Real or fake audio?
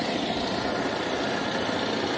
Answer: real